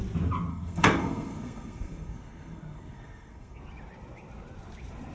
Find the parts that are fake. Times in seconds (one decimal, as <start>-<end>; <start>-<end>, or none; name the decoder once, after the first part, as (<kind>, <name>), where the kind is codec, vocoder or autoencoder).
0.5-3.6 (codec, SNAC)